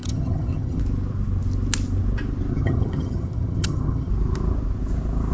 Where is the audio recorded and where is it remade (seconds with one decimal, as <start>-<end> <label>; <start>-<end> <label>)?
0.0-0.8 remade; 0.8-2.5 recorded; 2.5-4.1 remade; 4.1-5.3 recorded